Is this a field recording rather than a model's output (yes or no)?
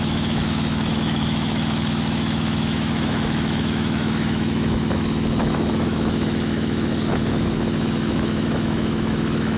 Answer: no